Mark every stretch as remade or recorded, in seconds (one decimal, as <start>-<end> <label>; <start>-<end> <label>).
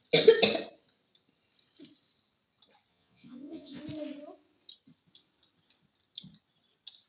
0.0-2.9 recorded; 2.9-3.8 remade; 3.8-7.1 recorded